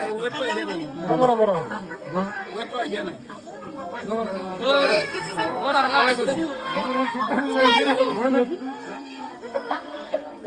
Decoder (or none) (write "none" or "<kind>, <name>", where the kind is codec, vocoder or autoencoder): codec, SNAC